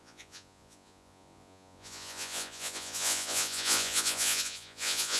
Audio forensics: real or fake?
fake